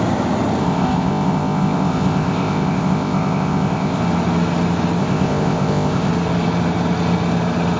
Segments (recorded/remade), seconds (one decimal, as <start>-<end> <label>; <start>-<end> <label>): 0.0-0.6 recorded; 0.6-4.0 remade; 4.0-5.0 recorded; 5.0-6.1 remade; 6.1-7.8 recorded